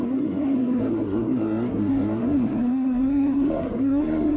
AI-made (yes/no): yes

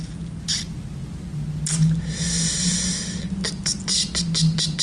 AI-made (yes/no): no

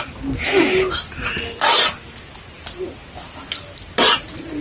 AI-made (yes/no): no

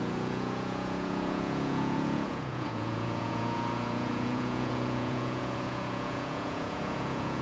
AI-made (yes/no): yes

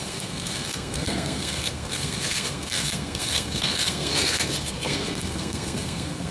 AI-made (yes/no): yes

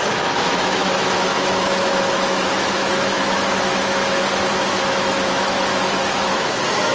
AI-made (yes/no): yes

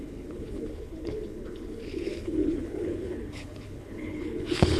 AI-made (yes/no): yes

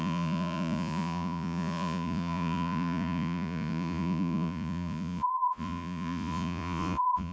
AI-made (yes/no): yes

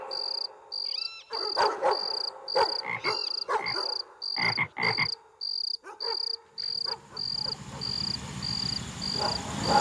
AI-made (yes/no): no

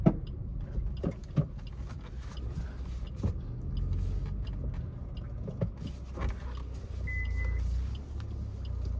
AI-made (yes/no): no